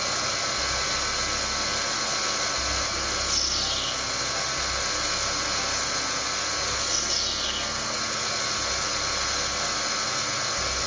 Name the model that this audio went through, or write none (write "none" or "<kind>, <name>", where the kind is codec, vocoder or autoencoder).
none